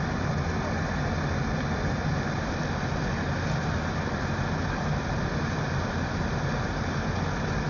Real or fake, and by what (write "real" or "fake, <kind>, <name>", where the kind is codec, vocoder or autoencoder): real